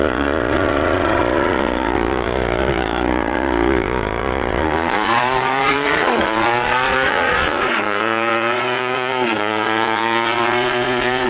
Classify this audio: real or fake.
fake